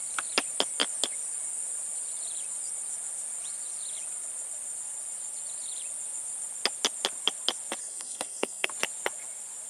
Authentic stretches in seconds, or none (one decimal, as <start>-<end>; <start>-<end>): 0.0-7.8; 8.7-9.7

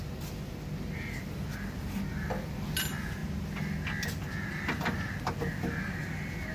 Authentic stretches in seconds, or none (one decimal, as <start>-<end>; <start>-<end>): 0.0-6.5

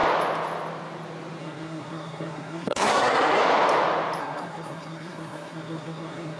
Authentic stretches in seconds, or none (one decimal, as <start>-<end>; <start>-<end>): 0.0-1.4; 3.4-4.2

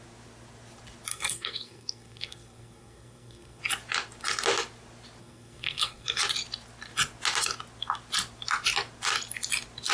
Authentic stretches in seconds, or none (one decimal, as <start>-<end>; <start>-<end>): 0.0-1.1; 3.6-5.2; 6.2-9.9